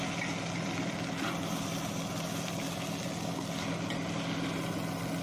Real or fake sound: real